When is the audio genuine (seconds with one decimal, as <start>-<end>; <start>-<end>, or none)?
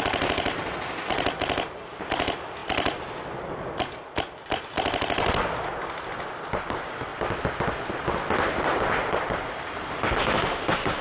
0.0-11.0